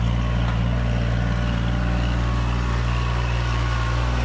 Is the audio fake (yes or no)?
no